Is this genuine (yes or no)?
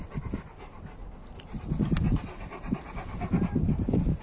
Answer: yes